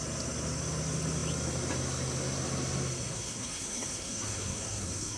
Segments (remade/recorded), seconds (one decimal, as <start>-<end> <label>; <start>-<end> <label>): 0.0-3.1 recorded; 3.1-5.2 remade